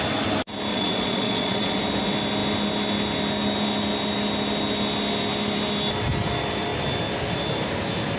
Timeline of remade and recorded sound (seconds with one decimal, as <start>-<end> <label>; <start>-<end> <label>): 0.0-0.7 recorded; 0.7-1.8 remade; 1.8-8.2 recorded